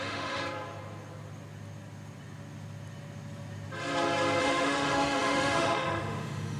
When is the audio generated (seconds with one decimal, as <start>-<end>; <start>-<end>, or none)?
0.0-0.4; 4.4-6.6

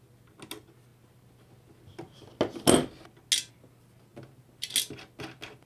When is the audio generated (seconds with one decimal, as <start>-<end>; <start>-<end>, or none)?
none

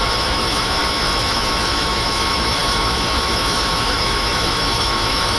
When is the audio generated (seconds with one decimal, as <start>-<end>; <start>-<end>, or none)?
0.0-0.8; 1.3-5.4

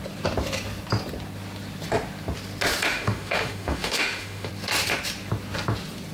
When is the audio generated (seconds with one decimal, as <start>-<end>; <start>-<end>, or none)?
2.9-4.5

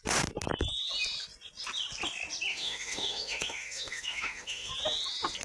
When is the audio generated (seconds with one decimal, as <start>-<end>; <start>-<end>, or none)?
2.5-4.7